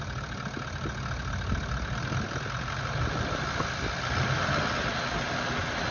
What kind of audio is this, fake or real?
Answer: real